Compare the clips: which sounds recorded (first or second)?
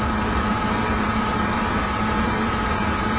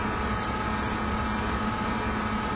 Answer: second